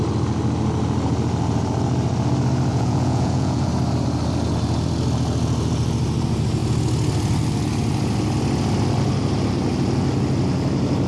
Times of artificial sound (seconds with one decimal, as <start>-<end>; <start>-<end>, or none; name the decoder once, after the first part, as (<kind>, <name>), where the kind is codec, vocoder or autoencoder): 2.7-3.7 (vocoder, Vocos)

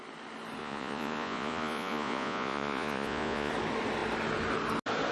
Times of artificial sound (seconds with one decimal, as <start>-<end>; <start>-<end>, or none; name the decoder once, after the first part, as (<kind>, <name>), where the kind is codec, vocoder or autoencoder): 0.6-3.5 (vocoder, Vocos)

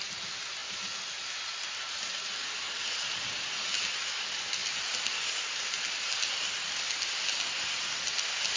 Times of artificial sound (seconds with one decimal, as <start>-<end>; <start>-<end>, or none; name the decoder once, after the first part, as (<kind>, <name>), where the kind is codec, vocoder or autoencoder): none

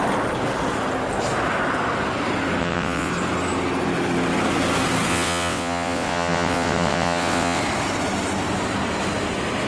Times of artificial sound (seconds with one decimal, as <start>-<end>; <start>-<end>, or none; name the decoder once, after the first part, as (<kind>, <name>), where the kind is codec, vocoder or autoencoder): 2.6-3.1 (vocoder, WaveNeXt); 5.1-7.6

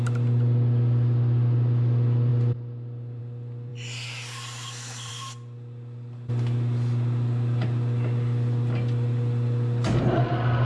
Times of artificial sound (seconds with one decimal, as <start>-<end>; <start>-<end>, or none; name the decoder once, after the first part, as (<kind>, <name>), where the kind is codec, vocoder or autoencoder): none